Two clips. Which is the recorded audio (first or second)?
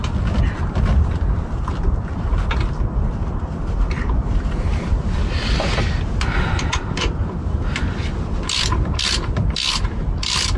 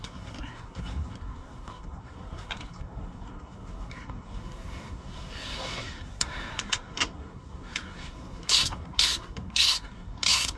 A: first